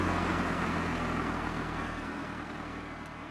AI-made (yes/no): yes